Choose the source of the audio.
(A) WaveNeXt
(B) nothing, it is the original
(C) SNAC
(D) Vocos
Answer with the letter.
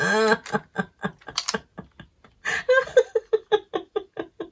B